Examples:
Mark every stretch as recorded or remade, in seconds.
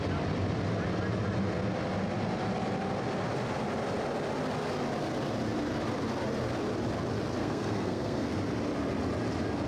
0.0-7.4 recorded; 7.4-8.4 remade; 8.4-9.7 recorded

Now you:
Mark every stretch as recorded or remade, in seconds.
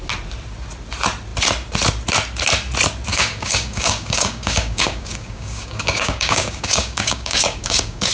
0.0-3.1 recorded; 3.1-8.1 remade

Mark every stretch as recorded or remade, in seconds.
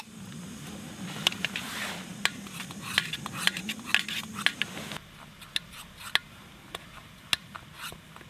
0.0-8.3 recorded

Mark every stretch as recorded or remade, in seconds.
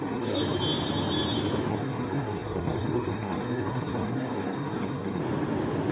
0.0-0.4 remade; 0.4-1.7 recorded; 1.7-5.2 remade; 5.2-5.9 recorded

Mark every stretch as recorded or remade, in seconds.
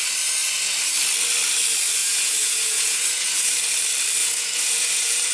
0.0-2.0 recorded; 2.0-3.5 remade; 3.5-4.2 recorded; 4.2-5.3 remade